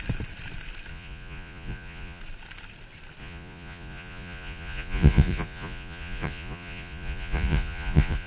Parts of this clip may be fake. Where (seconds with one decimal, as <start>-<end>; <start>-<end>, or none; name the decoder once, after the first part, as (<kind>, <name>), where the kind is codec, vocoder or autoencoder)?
0.9-2.2 (vocoder, Vocos); 3.2-8.3